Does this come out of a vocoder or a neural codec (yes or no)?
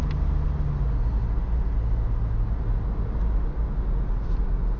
no